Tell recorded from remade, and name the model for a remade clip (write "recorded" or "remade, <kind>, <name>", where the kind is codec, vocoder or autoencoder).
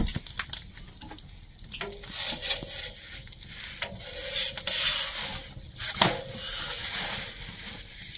recorded